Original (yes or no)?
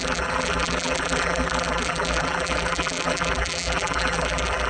no